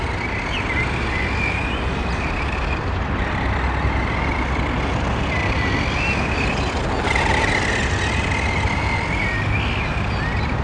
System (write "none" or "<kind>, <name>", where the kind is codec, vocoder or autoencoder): none